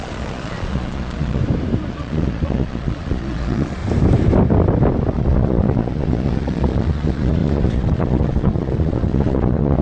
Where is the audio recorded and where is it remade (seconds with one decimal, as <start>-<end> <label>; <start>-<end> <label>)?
0.0-1.4 remade; 1.4-1.9 recorded; 1.9-3.8 remade; 3.8-5.1 recorded; 5.1-9.8 remade